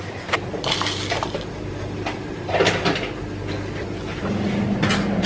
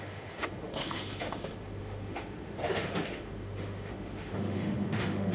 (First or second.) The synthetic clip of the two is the second